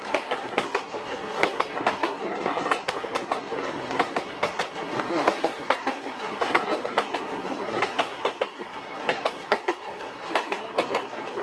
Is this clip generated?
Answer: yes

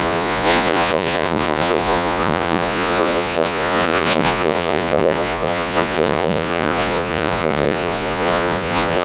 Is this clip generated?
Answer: yes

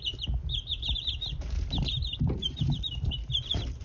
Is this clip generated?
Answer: no